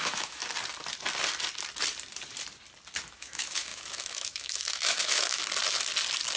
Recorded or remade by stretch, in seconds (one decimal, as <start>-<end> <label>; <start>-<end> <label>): 0.0-0.4 remade; 0.4-3.1 recorded; 3.1-5.4 remade; 5.4-6.4 recorded

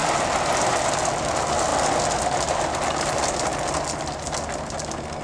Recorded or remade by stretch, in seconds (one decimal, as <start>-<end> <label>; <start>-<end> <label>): 0.0-5.2 recorded

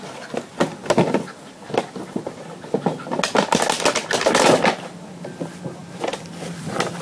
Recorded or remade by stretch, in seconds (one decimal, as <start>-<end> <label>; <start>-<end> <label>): 0.0-7.0 recorded

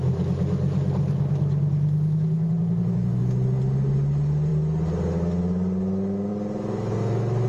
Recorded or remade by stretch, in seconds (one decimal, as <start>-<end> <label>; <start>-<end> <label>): 0.0-7.5 recorded

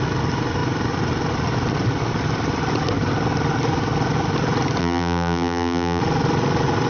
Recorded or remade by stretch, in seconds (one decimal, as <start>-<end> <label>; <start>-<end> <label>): 0.0-4.8 recorded; 4.8-6.0 remade; 6.0-6.9 recorded

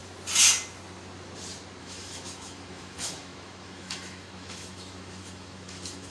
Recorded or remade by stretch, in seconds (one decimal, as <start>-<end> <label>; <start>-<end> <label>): 0.0-1.8 recorded; 1.8-6.1 remade

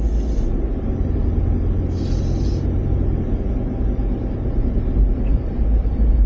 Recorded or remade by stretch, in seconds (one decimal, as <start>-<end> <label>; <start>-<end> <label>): 0.0-6.3 recorded

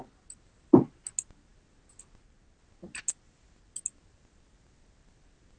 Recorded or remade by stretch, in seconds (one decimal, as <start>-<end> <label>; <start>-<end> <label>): 0.0-5.6 recorded